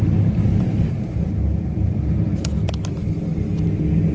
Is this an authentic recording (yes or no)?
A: no